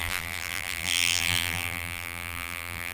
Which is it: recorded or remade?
remade